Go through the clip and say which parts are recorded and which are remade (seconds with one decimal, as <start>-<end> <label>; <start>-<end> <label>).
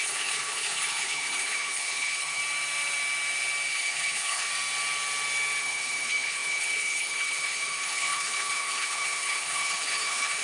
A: 0.0-2.4 remade; 2.4-3.7 recorded; 3.7-4.5 remade; 4.5-5.6 recorded; 5.6-10.4 remade